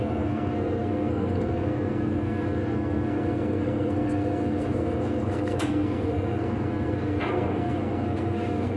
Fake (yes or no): yes